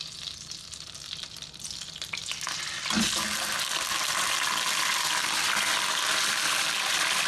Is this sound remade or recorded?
recorded